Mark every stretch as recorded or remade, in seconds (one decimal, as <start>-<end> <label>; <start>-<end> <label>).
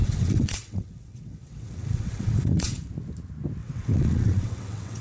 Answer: 0.0-2.9 remade; 2.9-3.6 recorded; 3.6-5.0 remade